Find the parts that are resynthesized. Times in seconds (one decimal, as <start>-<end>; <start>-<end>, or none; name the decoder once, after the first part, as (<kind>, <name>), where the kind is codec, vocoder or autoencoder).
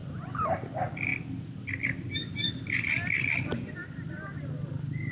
none